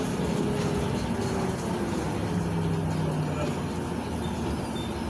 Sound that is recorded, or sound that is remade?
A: recorded